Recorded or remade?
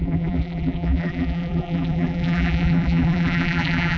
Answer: remade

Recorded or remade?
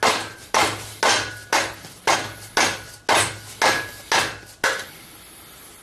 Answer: recorded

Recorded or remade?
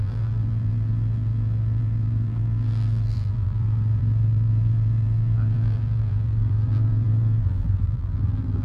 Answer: remade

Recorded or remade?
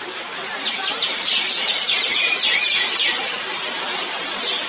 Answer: remade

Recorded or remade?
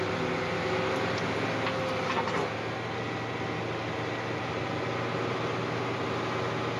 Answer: recorded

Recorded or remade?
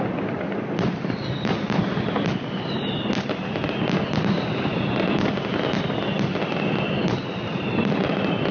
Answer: recorded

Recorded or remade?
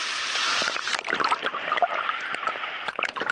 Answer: remade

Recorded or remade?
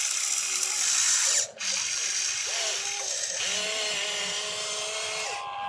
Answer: recorded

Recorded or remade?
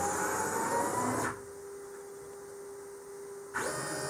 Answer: recorded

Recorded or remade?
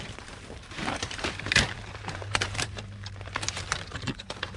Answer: remade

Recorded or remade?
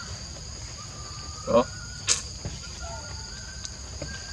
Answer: remade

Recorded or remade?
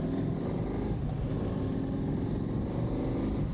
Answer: recorded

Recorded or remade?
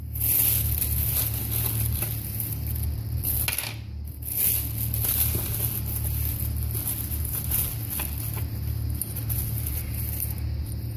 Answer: recorded